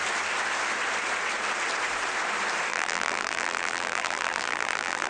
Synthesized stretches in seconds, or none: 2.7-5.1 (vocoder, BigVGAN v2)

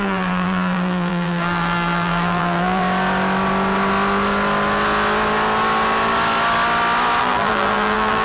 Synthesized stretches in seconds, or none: 0.0-2.8 (vocoder, BigVGAN v2); 7.2-8.2

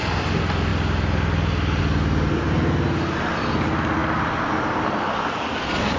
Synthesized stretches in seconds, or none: 4.0-6.0 (vocoder, BigVGAN v2)

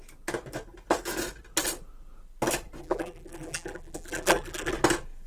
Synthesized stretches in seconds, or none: 2.8-4.7 (vocoder, BigVGAN v2)

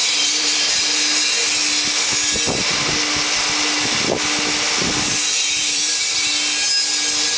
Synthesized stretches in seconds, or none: 0.0-1.2 (vocoder, BigVGAN v2); 5.6-6.3